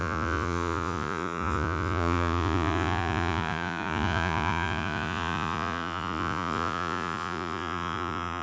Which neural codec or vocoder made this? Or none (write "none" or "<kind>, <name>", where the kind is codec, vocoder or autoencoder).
vocoder, Vocos